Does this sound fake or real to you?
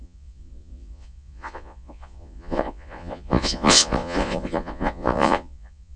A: fake